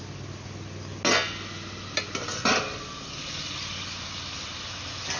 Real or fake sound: real